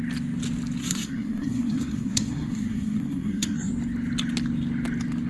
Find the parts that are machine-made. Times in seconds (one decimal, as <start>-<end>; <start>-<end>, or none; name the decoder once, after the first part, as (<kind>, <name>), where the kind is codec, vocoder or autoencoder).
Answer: 0.8-3.7 (codec, SNAC)